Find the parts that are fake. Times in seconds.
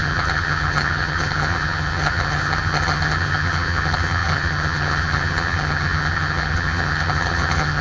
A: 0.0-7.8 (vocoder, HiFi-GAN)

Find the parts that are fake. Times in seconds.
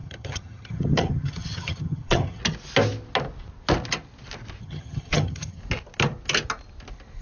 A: 0.0-2.4 (vocoder, HiFi-GAN); 4.6-5.6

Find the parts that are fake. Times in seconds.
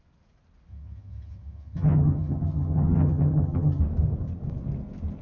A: 0.7-3.8 (vocoder, HiFi-GAN)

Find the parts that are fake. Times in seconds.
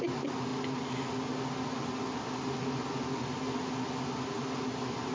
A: none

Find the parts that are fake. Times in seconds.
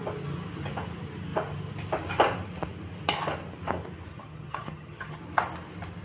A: 4.1-5.2 (vocoder, HiFi-GAN)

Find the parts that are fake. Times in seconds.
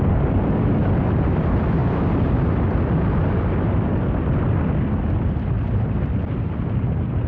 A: none